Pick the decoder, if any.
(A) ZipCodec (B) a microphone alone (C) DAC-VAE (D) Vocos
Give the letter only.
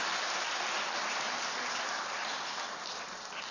B